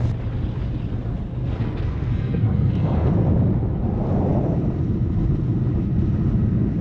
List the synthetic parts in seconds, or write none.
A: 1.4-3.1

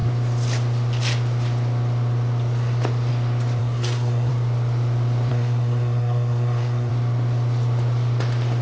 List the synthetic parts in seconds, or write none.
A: 3.6-4.3; 5.3-6.9

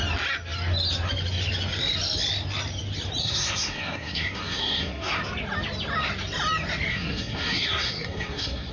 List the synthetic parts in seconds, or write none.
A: 3.2-5.2; 6.9-8.7

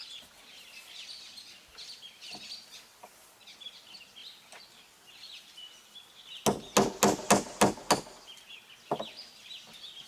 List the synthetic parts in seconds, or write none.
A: none

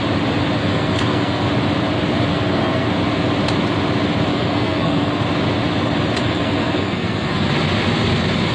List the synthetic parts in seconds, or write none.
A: 0.6-1.5; 2.3-2.9; 4.3-5.2; 6.2-7.5

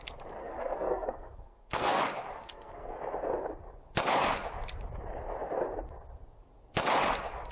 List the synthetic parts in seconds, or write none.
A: 0.4-2.0; 2.4-3.0